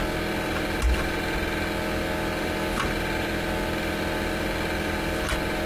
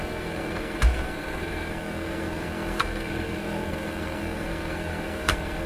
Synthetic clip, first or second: second